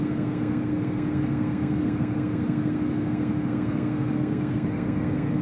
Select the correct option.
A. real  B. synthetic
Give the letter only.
B